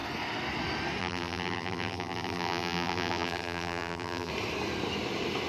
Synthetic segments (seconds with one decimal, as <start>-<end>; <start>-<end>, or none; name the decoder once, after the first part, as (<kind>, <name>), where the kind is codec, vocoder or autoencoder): 1.0-4.3 (vocoder, BigVGAN v2)